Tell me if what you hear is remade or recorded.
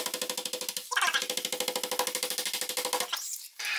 recorded